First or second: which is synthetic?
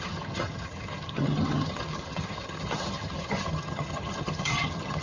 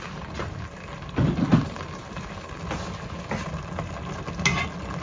first